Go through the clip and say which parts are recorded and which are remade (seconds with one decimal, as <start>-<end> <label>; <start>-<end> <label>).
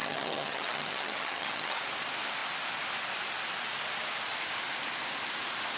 0.0-1.8 remade; 1.8-5.8 recorded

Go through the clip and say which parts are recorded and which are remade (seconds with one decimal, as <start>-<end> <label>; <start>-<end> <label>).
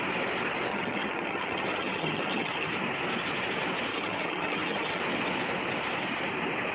0.0-0.7 recorded; 0.7-2.7 remade; 2.7-3.9 recorded; 3.9-5.0 remade; 5.0-6.7 recorded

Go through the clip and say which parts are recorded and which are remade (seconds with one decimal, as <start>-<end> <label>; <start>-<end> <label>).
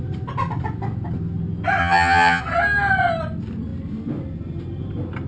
0.0-1.8 recorded; 1.8-2.4 remade; 2.4-5.3 recorded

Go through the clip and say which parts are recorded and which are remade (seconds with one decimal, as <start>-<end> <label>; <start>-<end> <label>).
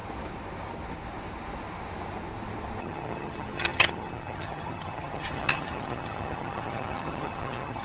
0.0-2.8 recorded; 2.8-7.8 remade